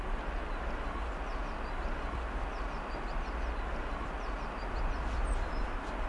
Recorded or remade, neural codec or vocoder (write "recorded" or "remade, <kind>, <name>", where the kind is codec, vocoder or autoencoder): recorded